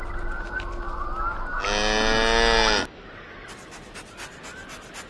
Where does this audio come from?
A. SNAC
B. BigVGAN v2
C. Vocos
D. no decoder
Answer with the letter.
D